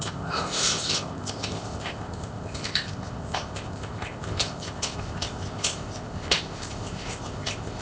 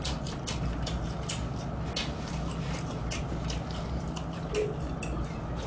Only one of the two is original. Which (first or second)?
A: second